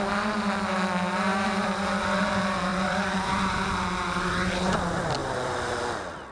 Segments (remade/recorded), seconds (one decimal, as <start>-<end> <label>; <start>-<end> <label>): 0.0-1.3 recorded; 1.3-2.0 remade; 2.0-2.7 recorded; 2.7-3.7 remade; 3.7-5.2 recorded; 5.2-5.8 remade; 5.8-6.3 recorded